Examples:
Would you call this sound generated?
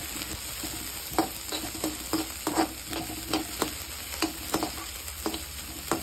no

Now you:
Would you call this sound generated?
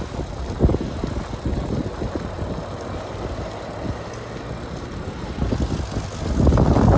no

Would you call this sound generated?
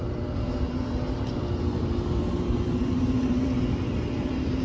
yes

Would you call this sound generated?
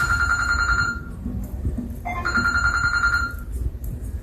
yes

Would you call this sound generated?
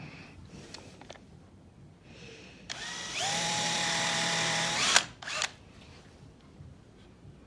yes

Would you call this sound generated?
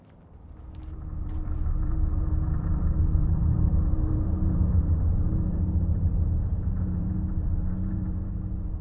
yes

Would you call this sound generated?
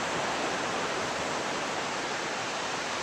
yes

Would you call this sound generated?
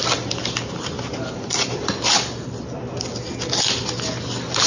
no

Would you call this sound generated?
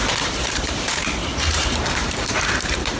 yes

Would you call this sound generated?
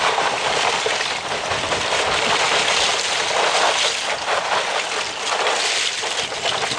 no